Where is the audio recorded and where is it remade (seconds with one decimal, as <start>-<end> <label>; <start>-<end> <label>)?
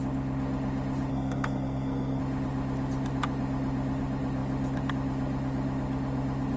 0.0-1.1 recorded; 1.1-2.2 remade; 2.2-6.6 recorded